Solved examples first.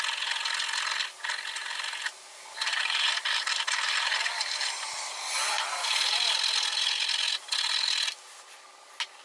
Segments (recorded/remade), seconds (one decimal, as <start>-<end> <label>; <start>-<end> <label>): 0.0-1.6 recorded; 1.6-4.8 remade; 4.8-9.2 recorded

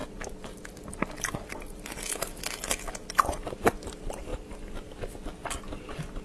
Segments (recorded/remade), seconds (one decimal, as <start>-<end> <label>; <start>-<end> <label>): 0.0-6.2 recorded

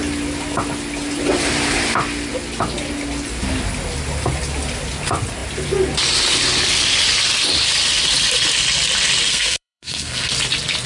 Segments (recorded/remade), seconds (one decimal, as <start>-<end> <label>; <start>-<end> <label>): 0.0-9.3 recorded; 9.3-10.3 remade; 10.3-10.9 recorded

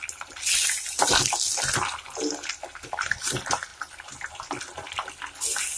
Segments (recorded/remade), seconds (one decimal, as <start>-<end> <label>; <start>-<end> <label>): 0.0-5.8 recorded

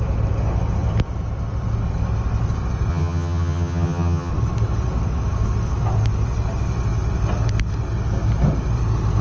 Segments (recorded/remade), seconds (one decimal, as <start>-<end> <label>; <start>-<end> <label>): 0.0-2.9 recorded; 2.9-4.3 remade; 4.3-9.2 recorded

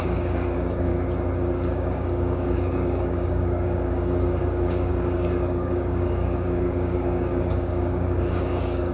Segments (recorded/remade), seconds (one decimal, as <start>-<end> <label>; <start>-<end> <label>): 0.0-0.9 remade; 0.9-1.7 recorded; 1.7-8.9 remade

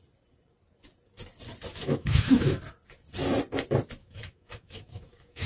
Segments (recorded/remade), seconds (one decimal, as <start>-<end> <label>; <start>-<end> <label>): 0.0-1.7 recorded; 1.7-2.6 remade; 2.6-4.0 recorded; 4.0-5.5 remade